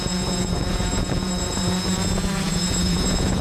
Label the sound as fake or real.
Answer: fake